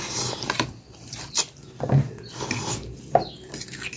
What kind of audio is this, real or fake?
real